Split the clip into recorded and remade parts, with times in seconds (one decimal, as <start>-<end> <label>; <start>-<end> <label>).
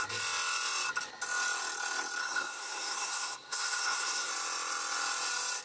0.0-2.2 recorded; 2.2-4.3 remade; 4.3-5.6 recorded